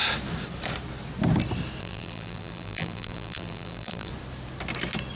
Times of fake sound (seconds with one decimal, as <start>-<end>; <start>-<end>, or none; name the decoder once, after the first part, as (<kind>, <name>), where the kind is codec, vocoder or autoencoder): 1.8-4.1 (vocoder, BigVGAN v2)